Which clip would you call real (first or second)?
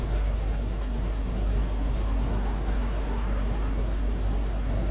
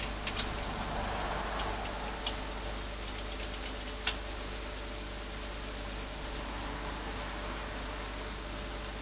second